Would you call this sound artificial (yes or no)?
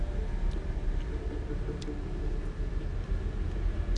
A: no